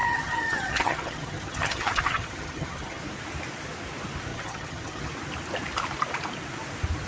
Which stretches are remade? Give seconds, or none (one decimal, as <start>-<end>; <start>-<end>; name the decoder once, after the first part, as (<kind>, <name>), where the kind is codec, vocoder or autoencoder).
0.0-3.0 (vocoder, HiFi-GAN); 4.3-5.1

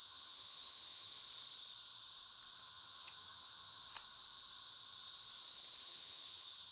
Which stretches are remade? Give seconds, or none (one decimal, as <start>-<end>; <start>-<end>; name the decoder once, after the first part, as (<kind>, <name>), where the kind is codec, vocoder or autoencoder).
0.0-1.1 (vocoder, HiFi-GAN); 2.6-3.8; 5.8-6.7